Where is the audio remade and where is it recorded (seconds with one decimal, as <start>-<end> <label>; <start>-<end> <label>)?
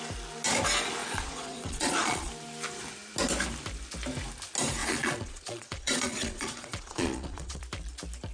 0.0-1.0 recorded; 1.0-2.3 remade; 2.3-4.8 recorded; 4.8-7.6 remade; 7.6-8.3 recorded